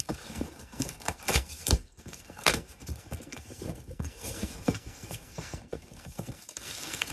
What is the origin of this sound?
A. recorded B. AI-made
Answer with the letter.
B